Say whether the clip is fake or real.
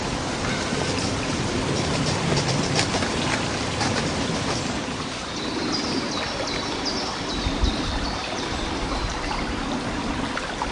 fake